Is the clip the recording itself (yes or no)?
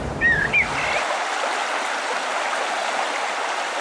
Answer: yes